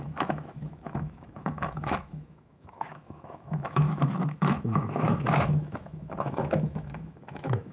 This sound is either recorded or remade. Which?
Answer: remade